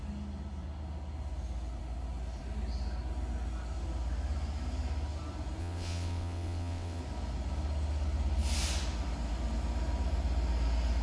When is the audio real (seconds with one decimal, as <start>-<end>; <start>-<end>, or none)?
0.0-5.6; 7.0-11.0